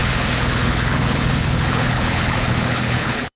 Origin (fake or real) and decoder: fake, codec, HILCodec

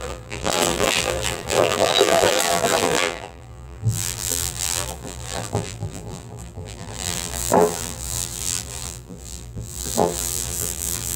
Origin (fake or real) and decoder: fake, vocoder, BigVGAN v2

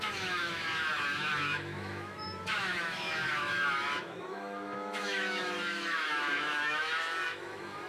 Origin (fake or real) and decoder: fake, autoencoder, DAC-VAE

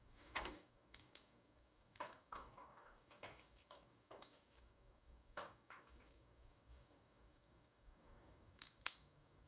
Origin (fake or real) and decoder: fake, codec, DAC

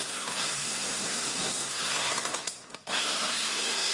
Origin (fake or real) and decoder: fake, codec, SNAC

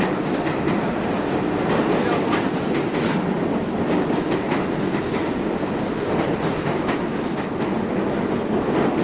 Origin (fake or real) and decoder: real